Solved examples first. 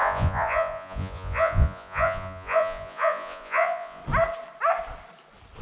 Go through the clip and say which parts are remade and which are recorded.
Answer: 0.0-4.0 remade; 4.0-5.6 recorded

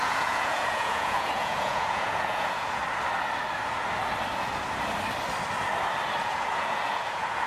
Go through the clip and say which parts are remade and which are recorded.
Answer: 0.0-2.8 remade; 2.8-6.2 recorded; 6.2-7.5 remade

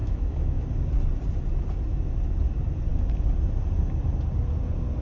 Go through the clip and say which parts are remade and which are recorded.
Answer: 0.0-0.6 remade; 0.6-5.0 recorded

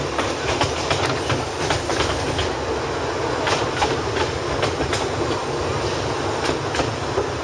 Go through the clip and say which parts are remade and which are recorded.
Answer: 0.0-7.4 recorded